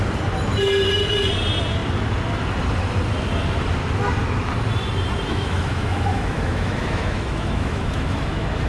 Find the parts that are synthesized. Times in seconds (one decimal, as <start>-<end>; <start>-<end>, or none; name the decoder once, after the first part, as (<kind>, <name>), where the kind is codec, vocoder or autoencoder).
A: 5.3-8.7 (autoencoder, DAC-VAE)